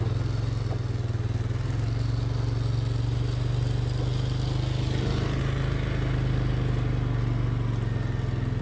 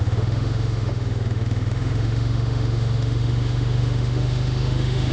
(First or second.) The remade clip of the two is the second